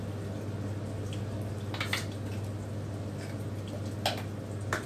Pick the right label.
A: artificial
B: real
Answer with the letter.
B